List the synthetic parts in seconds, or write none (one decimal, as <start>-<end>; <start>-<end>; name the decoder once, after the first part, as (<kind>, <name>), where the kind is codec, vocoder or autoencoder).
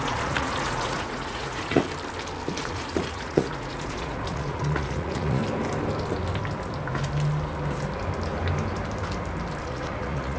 0.0-1.8 (vocoder, Vocos); 2.6-5.4; 9.6-10.4